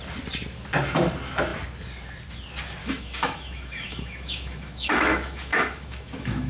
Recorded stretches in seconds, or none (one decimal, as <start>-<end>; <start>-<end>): 0.0-2.8